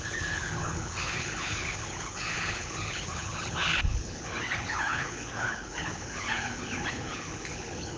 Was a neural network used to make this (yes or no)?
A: yes